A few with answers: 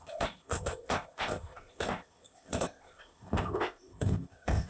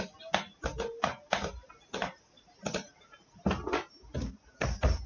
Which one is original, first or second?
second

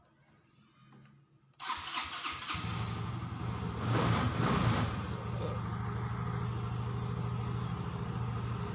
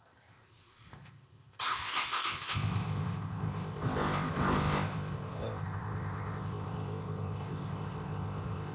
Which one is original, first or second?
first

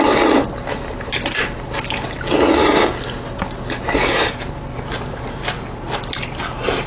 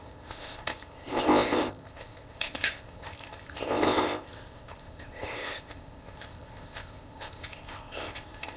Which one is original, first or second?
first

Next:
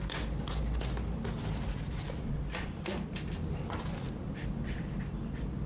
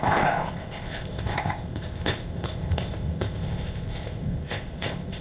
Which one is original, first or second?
first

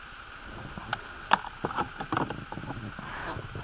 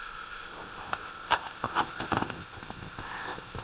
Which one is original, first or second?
first